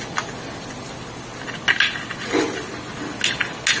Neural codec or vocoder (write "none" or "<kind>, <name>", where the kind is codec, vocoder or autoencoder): none